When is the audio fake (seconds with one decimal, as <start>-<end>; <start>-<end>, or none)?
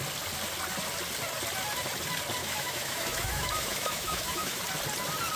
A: 2.4-4.6